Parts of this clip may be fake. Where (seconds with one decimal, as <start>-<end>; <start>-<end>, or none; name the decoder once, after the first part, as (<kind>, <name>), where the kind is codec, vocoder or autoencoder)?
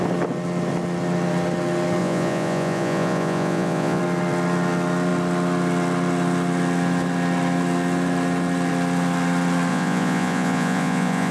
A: 2.0-4.0 (vocoder, Vocos); 9.7-11.3